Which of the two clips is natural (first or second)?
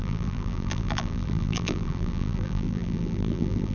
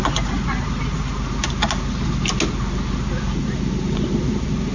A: second